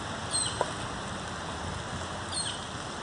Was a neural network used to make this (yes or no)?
no